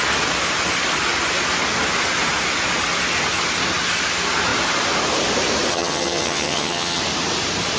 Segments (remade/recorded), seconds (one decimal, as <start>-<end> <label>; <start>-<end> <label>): 0.0-5.7 recorded; 5.7-7.0 remade; 7.0-7.8 recorded